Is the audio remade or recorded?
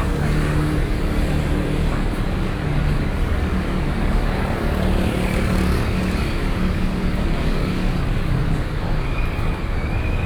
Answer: remade